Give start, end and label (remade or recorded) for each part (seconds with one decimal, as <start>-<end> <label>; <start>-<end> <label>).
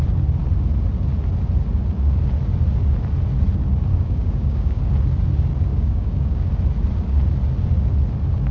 0.0-3.9 recorded; 3.9-4.8 remade; 4.8-5.7 recorded; 5.7-6.5 remade; 6.5-8.5 recorded